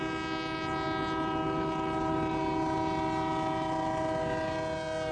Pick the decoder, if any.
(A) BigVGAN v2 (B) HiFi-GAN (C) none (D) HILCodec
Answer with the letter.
C